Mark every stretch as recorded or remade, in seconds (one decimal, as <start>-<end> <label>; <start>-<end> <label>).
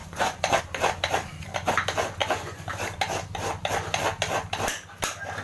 0.0-0.6 remade; 0.6-2.2 recorded; 2.2-2.7 remade; 2.7-5.4 recorded